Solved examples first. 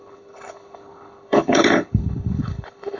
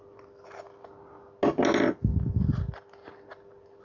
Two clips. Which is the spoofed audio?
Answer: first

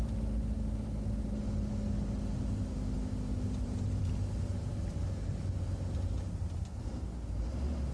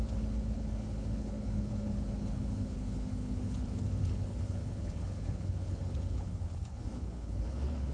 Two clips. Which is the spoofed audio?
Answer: second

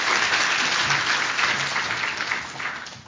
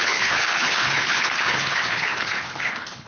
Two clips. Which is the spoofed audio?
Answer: second